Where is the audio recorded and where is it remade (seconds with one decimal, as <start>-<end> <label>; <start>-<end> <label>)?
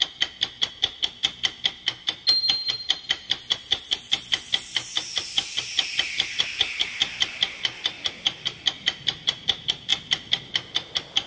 0.0-11.3 recorded